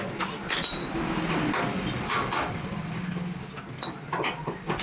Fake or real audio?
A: real